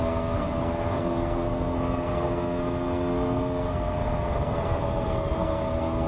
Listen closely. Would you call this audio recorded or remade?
remade